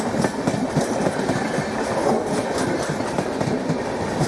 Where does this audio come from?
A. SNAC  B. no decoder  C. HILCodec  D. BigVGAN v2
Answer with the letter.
B